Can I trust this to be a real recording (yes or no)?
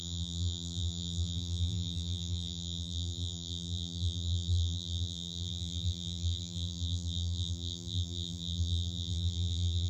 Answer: no